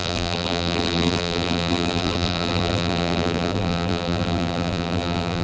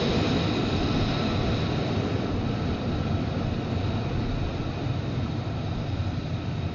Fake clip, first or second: first